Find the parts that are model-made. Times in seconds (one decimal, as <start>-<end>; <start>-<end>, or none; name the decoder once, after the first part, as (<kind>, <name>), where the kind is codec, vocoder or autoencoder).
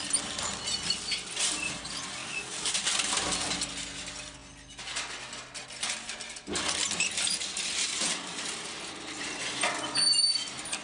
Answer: 2.2-2.7 (codec, DAC)